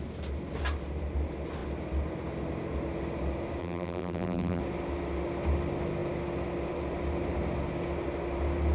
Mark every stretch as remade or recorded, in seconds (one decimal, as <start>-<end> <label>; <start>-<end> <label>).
0.0-3.6 recorded; 3.6-4.6 remade; 4.6-8.7 recorded